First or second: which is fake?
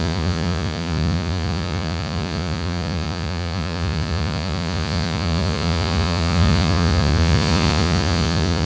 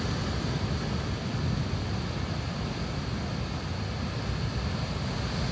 first